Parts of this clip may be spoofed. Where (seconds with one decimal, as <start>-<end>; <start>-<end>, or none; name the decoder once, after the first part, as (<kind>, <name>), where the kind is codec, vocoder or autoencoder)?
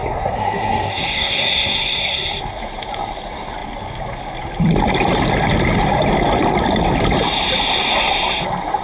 0.0-2.4 (codec, SNAC)